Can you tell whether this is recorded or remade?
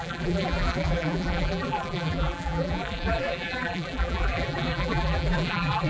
remade